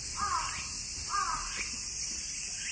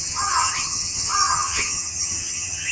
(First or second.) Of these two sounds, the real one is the first